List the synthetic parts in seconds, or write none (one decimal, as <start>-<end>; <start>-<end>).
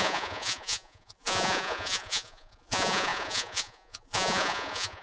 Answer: 0.0-5.0